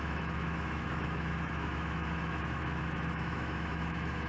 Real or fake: fake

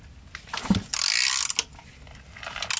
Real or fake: real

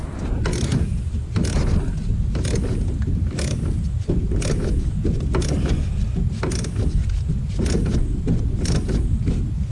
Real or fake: real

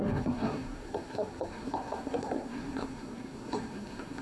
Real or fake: fake